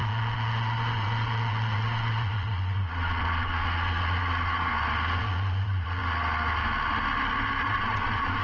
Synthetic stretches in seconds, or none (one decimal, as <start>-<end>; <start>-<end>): 0.0-4.7; 5.2-6.0; 7.6-8.4